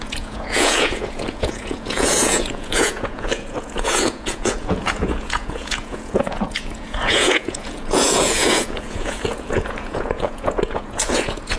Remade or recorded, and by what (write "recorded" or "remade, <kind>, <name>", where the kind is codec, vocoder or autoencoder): remade, vocoder, Vocos